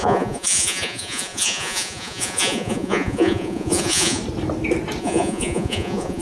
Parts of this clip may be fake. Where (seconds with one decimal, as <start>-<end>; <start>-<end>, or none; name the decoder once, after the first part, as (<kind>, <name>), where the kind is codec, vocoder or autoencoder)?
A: 0.0-4.2 (vocoder, Vocos); 5.0-6.2